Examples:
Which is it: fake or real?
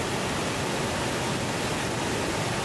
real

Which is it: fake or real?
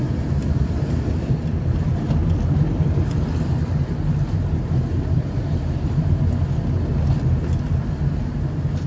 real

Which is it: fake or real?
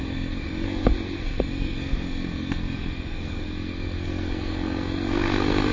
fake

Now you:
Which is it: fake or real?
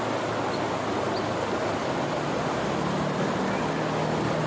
real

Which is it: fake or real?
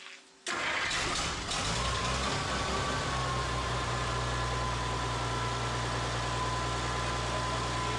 real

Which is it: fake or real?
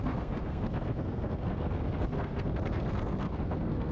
fake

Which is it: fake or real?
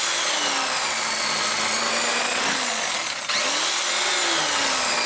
real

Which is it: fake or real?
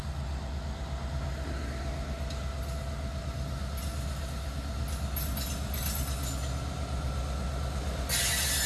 real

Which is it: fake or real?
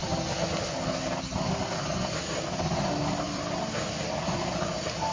real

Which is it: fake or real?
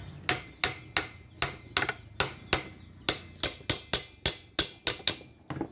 real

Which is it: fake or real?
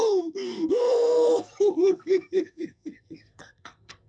fake